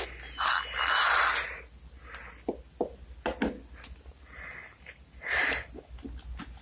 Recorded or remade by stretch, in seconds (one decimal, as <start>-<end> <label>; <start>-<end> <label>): 0.0-4.7 recorded; 4.7-5.4 remade; 5.4-6.6 recorded